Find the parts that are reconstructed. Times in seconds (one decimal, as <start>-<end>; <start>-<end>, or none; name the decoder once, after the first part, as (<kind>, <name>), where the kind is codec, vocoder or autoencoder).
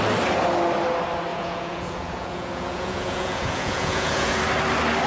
1.3-4.4 (vocoder, Vocos)